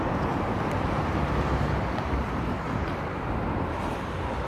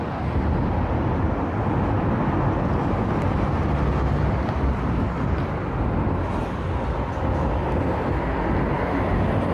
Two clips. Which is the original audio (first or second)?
second